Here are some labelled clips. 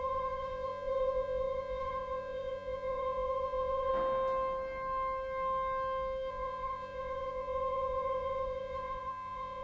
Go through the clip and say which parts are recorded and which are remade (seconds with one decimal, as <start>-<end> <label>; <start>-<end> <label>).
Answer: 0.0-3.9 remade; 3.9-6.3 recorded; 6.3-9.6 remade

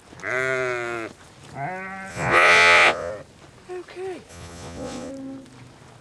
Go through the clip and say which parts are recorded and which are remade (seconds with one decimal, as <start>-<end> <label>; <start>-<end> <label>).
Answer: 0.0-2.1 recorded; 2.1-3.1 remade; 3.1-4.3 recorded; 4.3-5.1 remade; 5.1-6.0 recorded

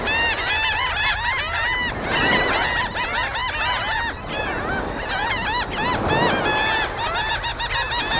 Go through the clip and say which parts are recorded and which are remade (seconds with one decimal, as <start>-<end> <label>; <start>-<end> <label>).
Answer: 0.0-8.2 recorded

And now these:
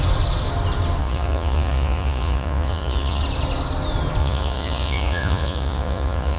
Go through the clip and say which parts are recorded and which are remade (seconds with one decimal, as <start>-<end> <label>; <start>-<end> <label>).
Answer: 0.0-1.0 recorded; 1.0-3.2 remade; 3.2-4.2 recorded; 4.2-6.4 remade

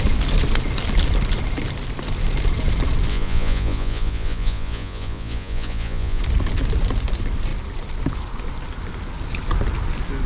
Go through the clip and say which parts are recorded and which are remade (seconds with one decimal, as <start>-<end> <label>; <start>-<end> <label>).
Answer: 0.0-3.1 recorded; 3.1-6.2 remade; 6.2-10.3 recorded

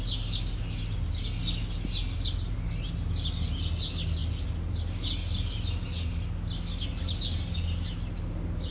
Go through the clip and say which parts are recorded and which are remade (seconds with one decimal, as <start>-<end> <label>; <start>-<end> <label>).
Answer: 0.0-8.7 recorded

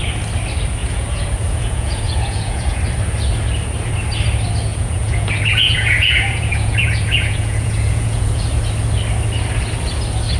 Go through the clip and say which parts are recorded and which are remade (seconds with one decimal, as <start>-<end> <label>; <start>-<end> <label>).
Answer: 0.0-0.8 recorded; 0.8-2.8 remade; 2.8-4.7 recorded; 4.7-8.4 remade; 8.4-10.4 recorded